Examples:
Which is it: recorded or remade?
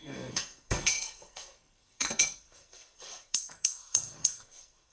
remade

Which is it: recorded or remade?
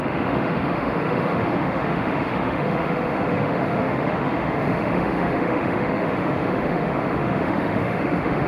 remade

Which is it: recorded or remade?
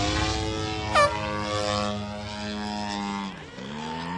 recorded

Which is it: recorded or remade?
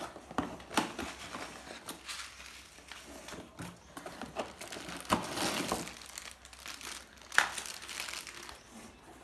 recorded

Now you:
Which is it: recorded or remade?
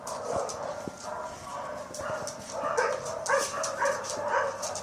recorded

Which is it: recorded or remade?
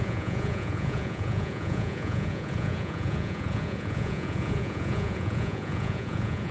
remade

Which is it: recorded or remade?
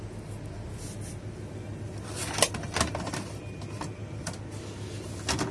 recorded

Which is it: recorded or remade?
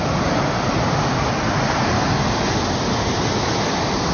recorded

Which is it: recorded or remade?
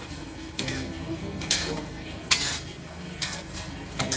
remade